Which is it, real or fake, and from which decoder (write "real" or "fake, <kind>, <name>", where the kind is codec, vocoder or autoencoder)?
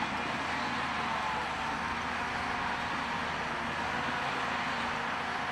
real